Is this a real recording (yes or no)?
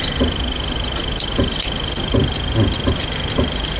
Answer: yes